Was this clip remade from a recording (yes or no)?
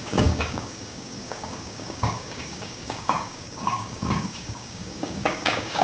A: yes